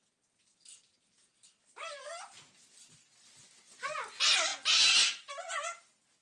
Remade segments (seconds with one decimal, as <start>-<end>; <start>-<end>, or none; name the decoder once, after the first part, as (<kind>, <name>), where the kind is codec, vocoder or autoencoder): none